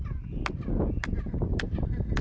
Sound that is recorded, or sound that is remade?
recorded